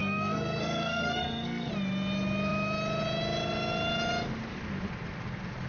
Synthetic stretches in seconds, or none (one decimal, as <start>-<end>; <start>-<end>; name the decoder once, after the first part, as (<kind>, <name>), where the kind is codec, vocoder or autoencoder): 0.0-1.7 (codec, SNAC)